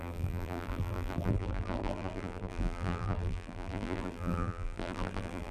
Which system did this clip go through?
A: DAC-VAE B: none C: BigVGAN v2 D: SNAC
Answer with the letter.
C